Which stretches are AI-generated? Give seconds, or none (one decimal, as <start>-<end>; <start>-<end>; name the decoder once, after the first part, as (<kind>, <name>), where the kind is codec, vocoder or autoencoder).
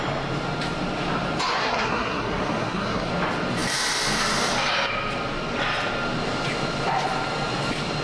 1.6-3.1 (codec, SNAC)